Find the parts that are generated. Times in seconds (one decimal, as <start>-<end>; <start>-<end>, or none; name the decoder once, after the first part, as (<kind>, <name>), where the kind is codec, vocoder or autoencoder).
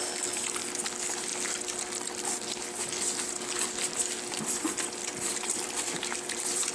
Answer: 5.0-6.7 (vocoder, BigVGAN v2)